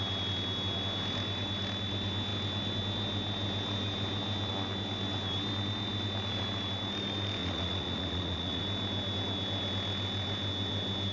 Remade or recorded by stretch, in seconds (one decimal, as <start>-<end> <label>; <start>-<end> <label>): 0.0-7.4 recorded; 7.4-8.6 remade; 8.6-11.1 recorded

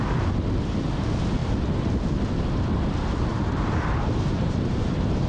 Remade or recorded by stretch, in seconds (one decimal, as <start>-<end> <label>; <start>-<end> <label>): 0.0-3.3 recorded; 3.3-5.3 remade

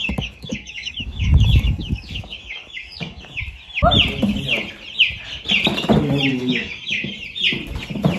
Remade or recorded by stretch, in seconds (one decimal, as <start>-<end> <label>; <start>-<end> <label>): 0.0-3.4 remade; 3.4-6.3 recorded; 6.3-7.1 remade; 7.1-8.2 recorded

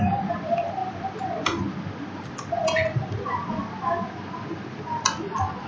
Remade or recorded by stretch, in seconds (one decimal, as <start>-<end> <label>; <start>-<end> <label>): 0.0-5.7 recorded

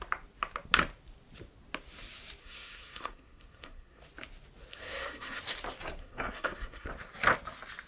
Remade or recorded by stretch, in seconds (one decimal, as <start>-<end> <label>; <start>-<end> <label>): 0.0-2.4 recorded; 2.4-4.0 remade; 4.0-4.7 recorded; 4.7-5.4 remade; 5.4-6.0 recorded; 6.0-6.9 remade; 6.9-7.9 recorded

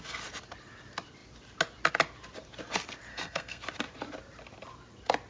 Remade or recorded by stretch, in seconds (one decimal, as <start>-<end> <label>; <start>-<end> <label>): 0.0-3.1 recorded; 3.1-3.6 remade; 3.6-5.3 recorded

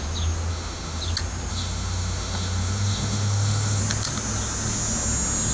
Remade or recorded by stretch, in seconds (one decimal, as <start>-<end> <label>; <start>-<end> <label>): 0.0-0.5 recorded; 0.5-1.0 remade; 1.0-1.5 recorded; 1.5-3.8 remade; 3.8-5.5 recorded

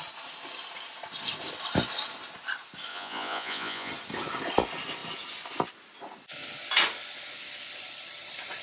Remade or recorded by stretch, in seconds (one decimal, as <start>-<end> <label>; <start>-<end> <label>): 0.0-2.9 recorded; 2.9-3.9 remade; 3.9-8.6 recorded